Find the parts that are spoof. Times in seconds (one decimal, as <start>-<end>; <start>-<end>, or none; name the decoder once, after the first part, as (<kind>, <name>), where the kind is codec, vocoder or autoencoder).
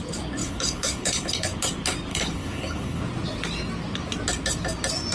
0.4-1.5 (codec, HILCodec); 2.1-3.0